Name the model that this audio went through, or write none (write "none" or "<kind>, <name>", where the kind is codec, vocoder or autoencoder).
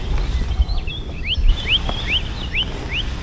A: none